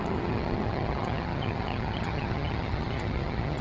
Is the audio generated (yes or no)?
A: yes